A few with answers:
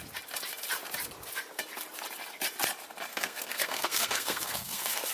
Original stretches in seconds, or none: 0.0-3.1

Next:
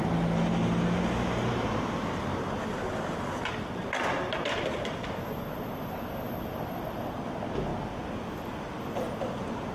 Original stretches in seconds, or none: 0.0-9.7

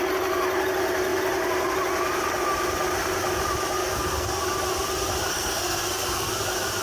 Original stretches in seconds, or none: 0.0-3.8; 4.4-5.3; 6.3-6.8

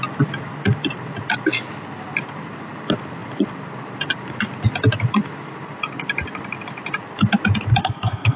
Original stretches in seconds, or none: 0.0-7.8

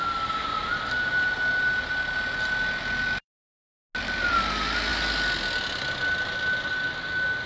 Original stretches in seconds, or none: 0.0-7.5

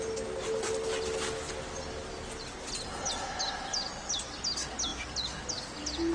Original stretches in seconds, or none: 0.0-6.1

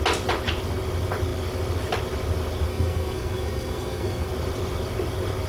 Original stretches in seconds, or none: 0.0-2.7; 4.3-5.5